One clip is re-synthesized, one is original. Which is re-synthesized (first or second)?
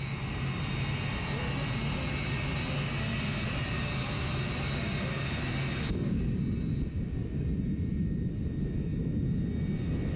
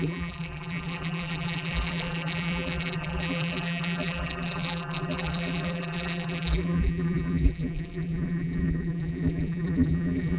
second